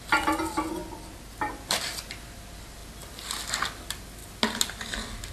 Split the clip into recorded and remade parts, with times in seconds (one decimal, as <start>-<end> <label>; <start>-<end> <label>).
0.0-5.3 recorded